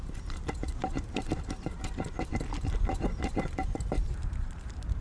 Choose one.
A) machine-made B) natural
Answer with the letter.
A